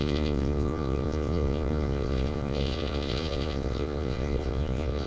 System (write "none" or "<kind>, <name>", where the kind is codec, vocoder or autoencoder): vocoder, Vocos